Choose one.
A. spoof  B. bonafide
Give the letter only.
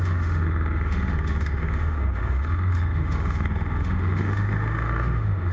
A